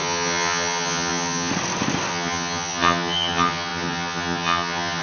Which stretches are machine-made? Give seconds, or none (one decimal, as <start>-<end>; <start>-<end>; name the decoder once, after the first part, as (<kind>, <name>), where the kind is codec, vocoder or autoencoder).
0.0-1.5 (vocoder, HiFi-GAN); 2.1-5.0

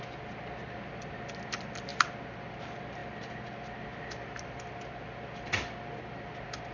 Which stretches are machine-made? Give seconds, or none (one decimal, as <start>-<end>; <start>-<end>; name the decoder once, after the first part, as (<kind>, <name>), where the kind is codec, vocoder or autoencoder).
none

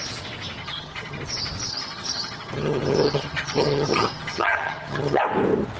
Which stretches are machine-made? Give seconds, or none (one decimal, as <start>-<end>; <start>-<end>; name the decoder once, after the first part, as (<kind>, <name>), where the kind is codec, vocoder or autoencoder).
0.6-1.2 (vocoder, HiFi-GAN); 1.7-5.2

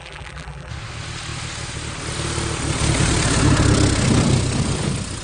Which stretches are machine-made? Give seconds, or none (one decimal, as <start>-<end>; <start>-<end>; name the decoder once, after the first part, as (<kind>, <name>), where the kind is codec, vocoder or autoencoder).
0.0-0.7 (vocoder, BigVGAN v2)

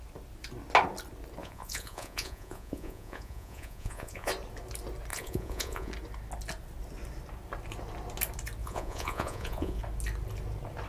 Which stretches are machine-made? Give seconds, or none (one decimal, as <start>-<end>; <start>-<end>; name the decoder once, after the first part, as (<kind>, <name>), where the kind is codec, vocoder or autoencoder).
1.4-4.3 (vocoder, Vocos); 5.1-5.9; 8.6-9.8

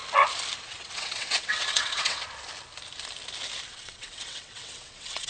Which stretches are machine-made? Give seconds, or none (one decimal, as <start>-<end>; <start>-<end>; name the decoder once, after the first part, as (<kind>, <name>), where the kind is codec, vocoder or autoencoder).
0.6-2.2 (vocoder, WaveNeXt); 3.7-5.3